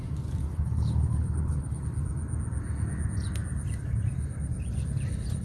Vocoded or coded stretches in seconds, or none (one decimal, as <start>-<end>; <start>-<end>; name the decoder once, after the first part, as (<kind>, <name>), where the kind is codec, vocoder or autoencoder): 0.4-1.8 (codec, HILCodec)